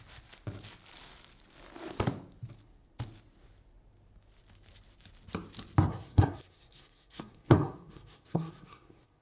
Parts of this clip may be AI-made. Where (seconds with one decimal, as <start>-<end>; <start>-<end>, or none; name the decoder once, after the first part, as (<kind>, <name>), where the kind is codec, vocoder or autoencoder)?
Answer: 5.9-9.2 (codec, SNAC)